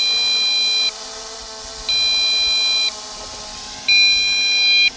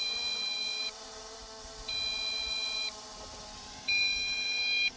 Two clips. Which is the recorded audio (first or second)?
first